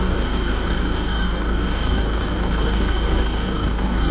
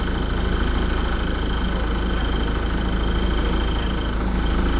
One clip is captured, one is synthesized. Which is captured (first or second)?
second